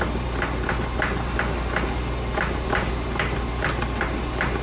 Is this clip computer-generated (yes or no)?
no